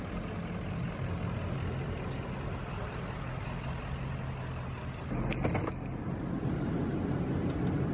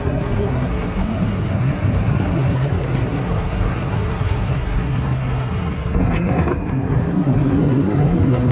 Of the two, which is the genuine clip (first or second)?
first